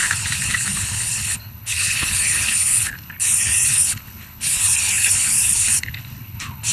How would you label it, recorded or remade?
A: remade